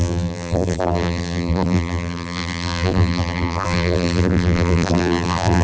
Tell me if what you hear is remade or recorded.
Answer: remade